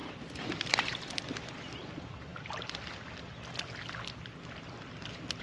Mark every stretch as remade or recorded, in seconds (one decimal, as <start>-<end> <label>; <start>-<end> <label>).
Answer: 0.0-1.1 remade; 1.1-5.4 recorded